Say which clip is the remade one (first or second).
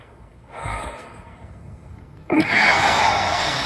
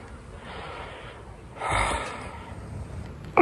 first